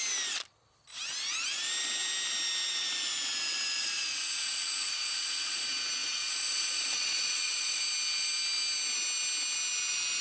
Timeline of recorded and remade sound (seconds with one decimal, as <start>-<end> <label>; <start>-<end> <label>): 0.0-3.8 recorded; 3.8-5.6 remade; 5.6-6.0 recorded; 6.0-7.8 remade; 7.8-10.2 recorded